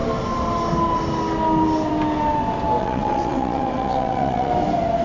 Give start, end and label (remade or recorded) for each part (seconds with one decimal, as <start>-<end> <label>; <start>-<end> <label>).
0.0-2.8 recorded; 2.8-4.5 remade; 4.5-5.0 recorded